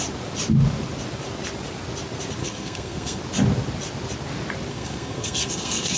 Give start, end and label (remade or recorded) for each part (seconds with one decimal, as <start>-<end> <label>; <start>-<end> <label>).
0.0-2.4 recorded; 2.4-3.2 remade; 3.2-4.7 recorded; 4.7-6.0 remade